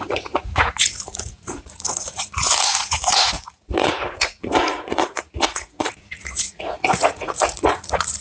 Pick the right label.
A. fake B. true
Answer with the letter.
A